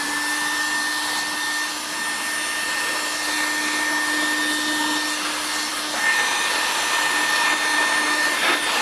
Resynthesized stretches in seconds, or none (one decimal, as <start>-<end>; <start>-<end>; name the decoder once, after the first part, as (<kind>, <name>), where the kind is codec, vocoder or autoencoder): none

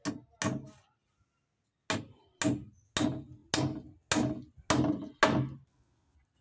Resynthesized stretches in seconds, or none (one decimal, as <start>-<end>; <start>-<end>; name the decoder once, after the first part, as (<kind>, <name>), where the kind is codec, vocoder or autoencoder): none

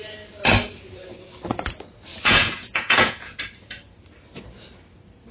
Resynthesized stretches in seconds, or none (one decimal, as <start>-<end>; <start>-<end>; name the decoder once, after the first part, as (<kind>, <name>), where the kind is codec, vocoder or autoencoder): 2.1-3.4 (vocoder, Vocos)

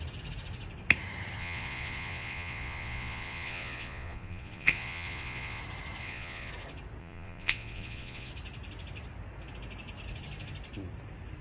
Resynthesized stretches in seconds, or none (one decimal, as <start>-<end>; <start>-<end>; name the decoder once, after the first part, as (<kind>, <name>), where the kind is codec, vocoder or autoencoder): 1.4-5.6 (vocoder, Vocos); 6.0-6.5; 7.0-8.3

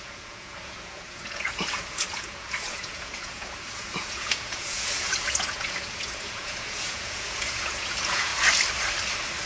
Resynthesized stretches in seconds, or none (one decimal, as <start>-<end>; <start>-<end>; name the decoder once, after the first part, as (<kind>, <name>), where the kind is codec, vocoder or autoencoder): 0.0-8.3 (vocoder, Vocos)

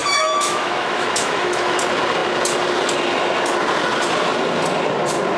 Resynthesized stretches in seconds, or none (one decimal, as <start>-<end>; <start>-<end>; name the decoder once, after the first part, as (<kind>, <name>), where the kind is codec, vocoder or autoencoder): 0.0-1.8 (autoencoder, DAC-VAE)

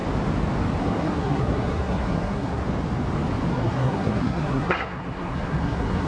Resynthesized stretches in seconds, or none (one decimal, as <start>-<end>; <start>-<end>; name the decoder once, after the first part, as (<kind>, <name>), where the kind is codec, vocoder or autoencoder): 0.8-2.6 (codec, SNAC); 3.5-6.1